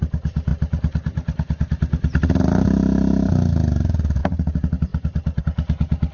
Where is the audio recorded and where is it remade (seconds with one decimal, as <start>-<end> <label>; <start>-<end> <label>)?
0.0-4.9 recorded; 4.9-5.4 remade; 5.4-6.1 recorded